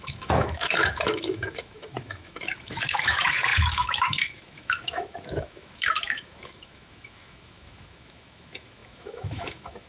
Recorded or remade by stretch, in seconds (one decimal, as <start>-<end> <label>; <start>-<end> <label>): 0.0-9.9 remade

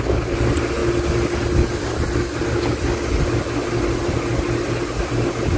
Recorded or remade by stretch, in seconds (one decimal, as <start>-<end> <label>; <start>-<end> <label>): 0.0-5.6 recorded